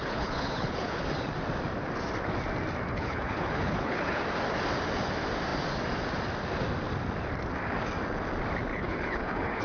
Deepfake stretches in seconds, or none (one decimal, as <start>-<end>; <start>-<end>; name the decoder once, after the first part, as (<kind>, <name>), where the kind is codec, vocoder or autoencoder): 0.0-1.0 (codec, HILCodec); 2.9-4.2; 8.7-9.6